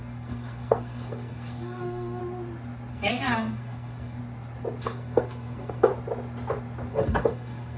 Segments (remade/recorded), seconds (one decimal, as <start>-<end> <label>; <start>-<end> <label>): 0.0-2.2 remade; 2.2-2.9 recorded; 2.9-4.2 remade; 4.2-4.8 recorded; 4.8-5.9 remade; 5.9-6.9 recorded; 6.9-7.8 remade